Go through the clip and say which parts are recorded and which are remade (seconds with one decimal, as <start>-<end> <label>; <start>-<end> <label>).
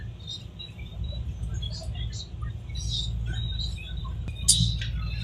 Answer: 0.0-5.2 recorded